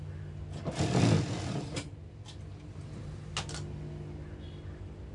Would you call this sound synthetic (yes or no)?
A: no